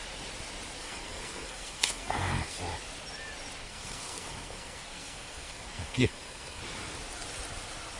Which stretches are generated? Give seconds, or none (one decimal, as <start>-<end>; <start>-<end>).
0.8-2.6; 3.6-6.6